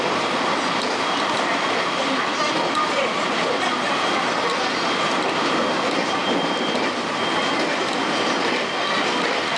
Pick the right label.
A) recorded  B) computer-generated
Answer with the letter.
A